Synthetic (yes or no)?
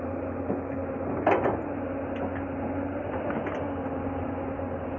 no